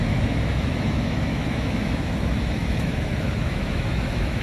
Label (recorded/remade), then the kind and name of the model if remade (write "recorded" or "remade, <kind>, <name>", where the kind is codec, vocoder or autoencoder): remade, autoencoder, DAC-VAE